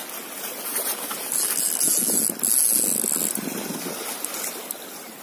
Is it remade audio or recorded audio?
recorded